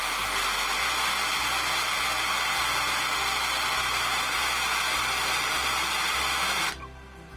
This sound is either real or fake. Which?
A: real